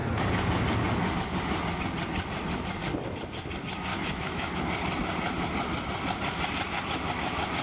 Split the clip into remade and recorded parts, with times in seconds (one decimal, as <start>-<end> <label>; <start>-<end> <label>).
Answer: 0.0-3.9 recorded; 3.9-4.6 remade; 4.6-7.6 recorded